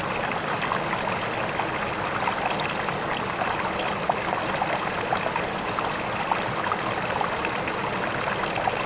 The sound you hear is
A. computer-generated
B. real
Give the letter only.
B